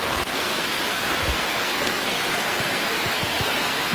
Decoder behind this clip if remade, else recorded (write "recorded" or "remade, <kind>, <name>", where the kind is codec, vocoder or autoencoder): remade, codec, SNAC